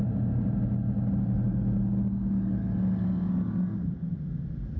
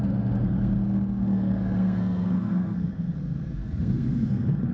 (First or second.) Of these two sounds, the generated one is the second